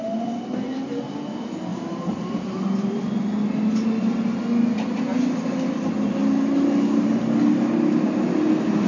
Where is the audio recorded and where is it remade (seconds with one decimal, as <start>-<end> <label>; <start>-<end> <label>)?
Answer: 0.0-1.7 recorded; 1.7-3.0 remade; 3.0-8.9 recorded